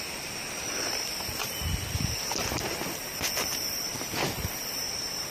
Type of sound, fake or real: fake